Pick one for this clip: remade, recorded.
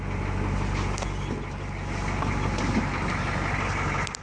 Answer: recorded